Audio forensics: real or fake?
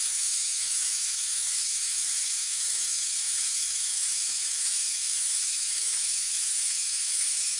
fake